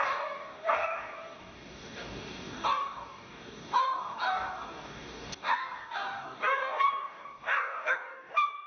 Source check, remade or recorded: remade